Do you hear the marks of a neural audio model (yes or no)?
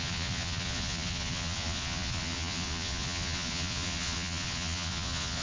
yes